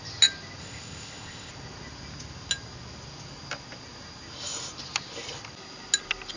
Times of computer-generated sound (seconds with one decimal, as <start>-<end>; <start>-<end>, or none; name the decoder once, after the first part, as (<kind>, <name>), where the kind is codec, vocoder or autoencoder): 0.6-1.5 (codec, ZipCodec)